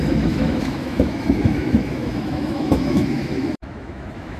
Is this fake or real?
fake